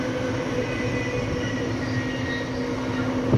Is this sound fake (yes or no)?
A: no